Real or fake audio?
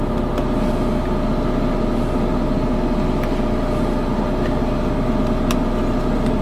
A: real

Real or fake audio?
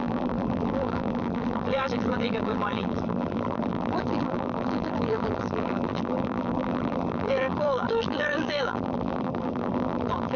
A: fake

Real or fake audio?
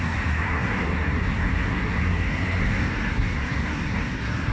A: fake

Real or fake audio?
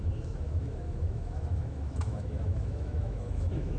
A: fake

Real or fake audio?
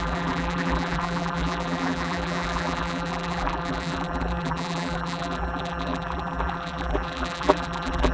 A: fake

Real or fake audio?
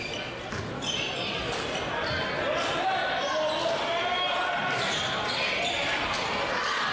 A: real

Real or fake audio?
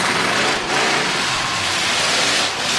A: fake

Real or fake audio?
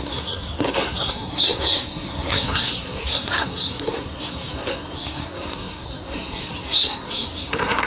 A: fake